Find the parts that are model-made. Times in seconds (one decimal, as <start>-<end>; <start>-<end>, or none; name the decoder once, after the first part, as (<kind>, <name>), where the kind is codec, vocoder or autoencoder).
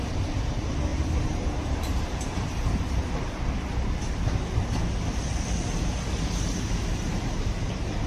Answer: 0.9-3.1 (vocoder, BigVGAN v2)